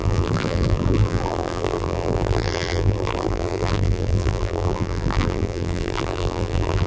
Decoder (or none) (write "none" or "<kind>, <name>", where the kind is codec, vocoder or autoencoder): vocoder, BigVGAN v2